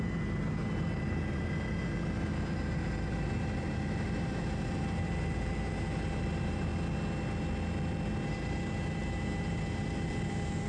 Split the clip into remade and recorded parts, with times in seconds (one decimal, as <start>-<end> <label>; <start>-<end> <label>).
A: 0.0-6.7 remade; 6.7-8.3 recorded; 8.3-10.7 remade

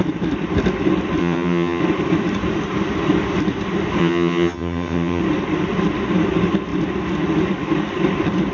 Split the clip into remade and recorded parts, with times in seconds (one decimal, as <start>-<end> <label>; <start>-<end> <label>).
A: 0.0-1.2 recorded; 1.2-1.8 remade; 1.8-4.0 recorded; 4.0-5.2 remade; 5.2-8.5 recorded

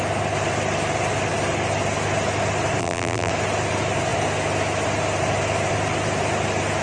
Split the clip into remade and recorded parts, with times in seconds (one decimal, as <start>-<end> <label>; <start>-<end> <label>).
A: 0.0-2.8 recorded; 2.8-3.3 remade; 3.3-6.8 recorded

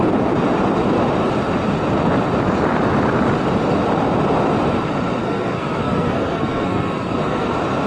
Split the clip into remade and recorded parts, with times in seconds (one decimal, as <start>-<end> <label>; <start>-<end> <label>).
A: 0.0-5.2 recorded; 5.2-7.5 remade; 7.5-7.9 recorded

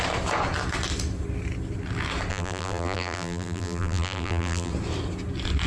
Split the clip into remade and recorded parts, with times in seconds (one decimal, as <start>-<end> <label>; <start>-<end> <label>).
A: 0.0-2.3 recorded; 2.3-4.7 remade; 4.7-5.7 recorded

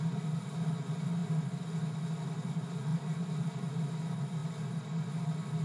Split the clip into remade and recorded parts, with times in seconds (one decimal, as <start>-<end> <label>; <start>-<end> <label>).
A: 0.0-2.9 recorded; 2.9-3.4 remade; 3.4-5.6 recorded

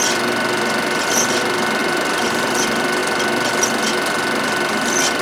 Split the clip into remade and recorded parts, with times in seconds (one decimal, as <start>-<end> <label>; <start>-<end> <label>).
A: 0.0-1.8 recorded; 1.8-2.5 remade; 2.5-5.2 recorded